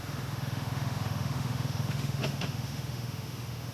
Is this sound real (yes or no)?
no